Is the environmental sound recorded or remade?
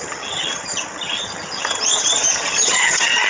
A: remade